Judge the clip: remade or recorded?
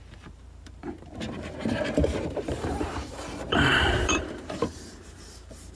remade